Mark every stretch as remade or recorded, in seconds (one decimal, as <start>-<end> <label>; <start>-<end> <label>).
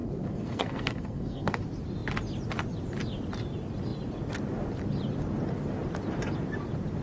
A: 0.0-1.6 remade; 1.6-7.0 recorded